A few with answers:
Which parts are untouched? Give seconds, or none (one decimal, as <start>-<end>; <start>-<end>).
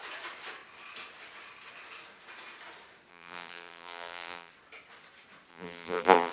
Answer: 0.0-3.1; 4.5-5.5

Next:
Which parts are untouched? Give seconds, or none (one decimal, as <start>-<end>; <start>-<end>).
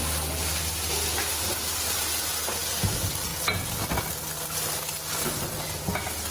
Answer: 0.0-6.3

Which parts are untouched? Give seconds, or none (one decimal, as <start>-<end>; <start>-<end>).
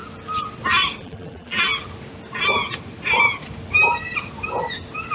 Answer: 0.0-1.0; 1.7-5.1